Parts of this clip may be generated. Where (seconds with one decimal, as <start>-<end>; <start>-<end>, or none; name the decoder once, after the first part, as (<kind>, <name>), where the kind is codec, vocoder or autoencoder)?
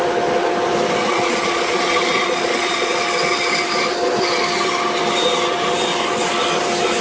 1.0-2.9 (vocoder, Vocos)